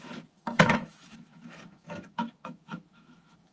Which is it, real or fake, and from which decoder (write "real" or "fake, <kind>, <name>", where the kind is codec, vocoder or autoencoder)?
fake, autoencoder, DAC-VAE